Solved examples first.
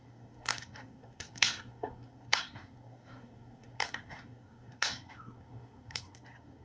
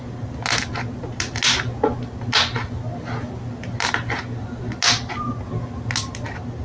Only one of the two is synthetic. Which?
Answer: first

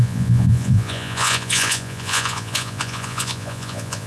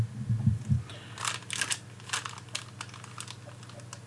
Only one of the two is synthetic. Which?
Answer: first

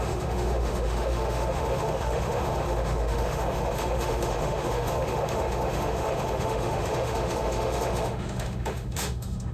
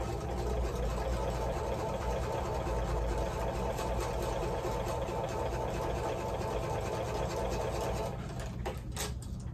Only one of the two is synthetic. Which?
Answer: first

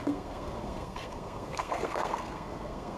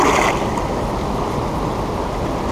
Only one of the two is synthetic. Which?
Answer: first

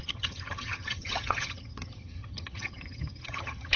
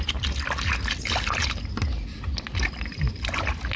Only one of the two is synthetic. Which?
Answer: first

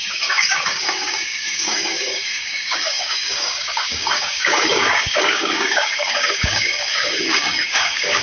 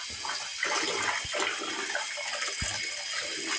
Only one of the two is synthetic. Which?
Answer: first